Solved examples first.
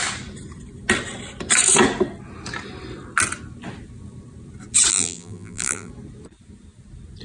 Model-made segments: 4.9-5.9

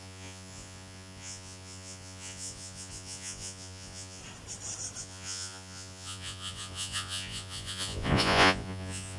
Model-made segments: 0.0-4.2; 5.0-9.2